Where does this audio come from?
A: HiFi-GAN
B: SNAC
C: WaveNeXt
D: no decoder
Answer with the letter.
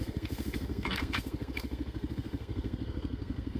B